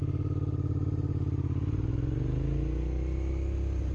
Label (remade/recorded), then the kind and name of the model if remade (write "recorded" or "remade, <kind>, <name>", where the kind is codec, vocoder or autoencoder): recorded